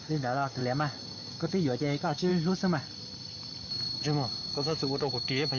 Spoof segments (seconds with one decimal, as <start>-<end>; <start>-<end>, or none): 0.0-0.6; 1.3-2.3; 4.5-5.6